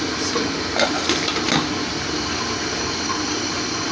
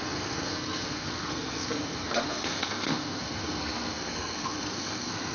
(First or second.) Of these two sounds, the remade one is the second